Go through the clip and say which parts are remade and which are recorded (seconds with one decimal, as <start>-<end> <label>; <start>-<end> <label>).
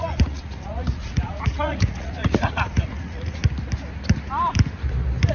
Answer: 0.0-3.4 remade; 3.4-5.3 recorded